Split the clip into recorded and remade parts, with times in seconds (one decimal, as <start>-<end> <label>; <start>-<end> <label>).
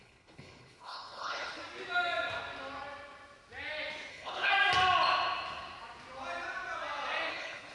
0.0-1.6 remade; 1.6-4.1 recorded; 4.1-4.5 remade; 4.5-7.3 recorded; 7.3-7.7 remade